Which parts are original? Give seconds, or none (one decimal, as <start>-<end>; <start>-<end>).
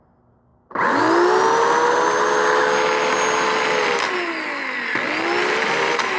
0.0-5.4